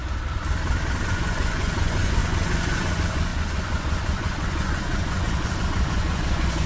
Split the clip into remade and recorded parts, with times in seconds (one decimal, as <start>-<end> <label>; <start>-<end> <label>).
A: 0.0-1.0 recorded; 1.0-6.7 remade